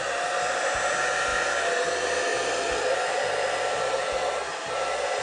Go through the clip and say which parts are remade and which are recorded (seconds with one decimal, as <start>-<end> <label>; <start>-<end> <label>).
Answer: 0.0-5.2 recorded